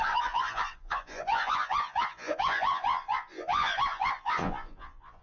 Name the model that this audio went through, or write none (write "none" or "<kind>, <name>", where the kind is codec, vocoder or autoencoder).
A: vocoder, Vocos